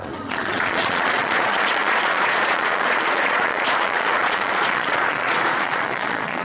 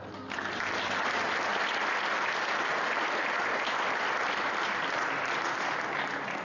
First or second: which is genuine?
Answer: second